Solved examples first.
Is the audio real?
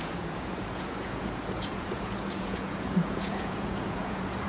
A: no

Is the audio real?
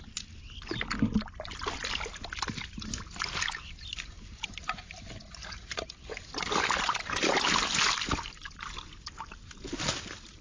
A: yes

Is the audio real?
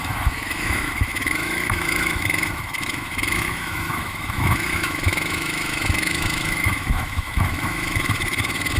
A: no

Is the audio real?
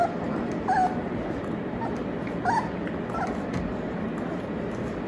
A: yes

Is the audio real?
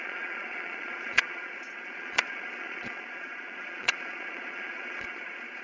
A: no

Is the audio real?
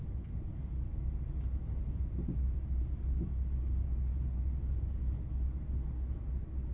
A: yes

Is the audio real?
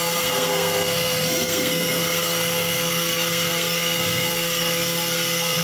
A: no